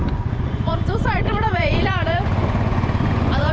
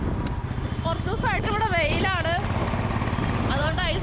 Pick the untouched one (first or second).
second